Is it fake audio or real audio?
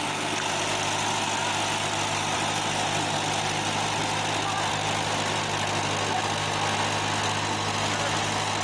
real